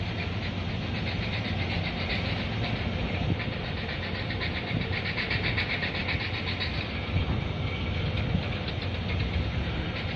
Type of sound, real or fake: real